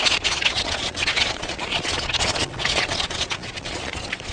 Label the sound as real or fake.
fake